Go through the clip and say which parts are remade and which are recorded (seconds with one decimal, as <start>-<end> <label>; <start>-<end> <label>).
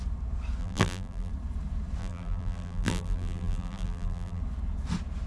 0.0-0.6 recorded; 0.6-1.3 remade; 1.3-2.0 recorded; 2.0-4.4 remade; 4.4-5.3 recorded